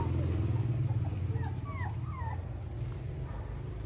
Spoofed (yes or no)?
no